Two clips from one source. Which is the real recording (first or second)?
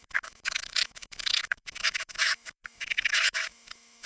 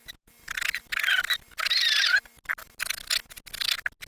second